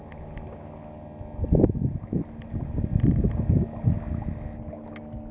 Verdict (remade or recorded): recorded